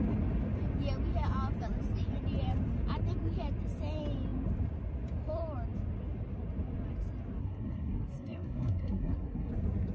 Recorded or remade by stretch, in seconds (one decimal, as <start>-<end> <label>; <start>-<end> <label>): 0.0-7.4 recorded; 7.4-9.5 remade; 9.5-9.9 recorded